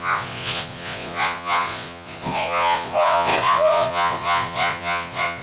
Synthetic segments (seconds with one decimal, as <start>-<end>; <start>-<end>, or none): 0.0-5.4

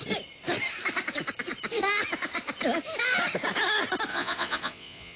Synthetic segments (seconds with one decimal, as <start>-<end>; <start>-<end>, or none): 4.1-5.2

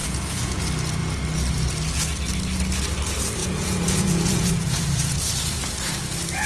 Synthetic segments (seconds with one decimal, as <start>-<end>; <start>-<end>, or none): 0.0-0.6; 3.4-5.2

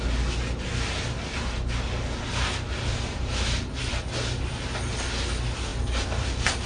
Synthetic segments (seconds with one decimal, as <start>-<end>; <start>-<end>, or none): none

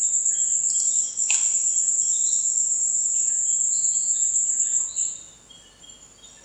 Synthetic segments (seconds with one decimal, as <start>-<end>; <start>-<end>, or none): 2.6-4.5

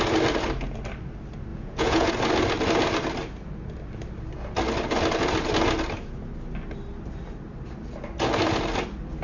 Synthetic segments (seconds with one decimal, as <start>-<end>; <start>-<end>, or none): 1.5-2.1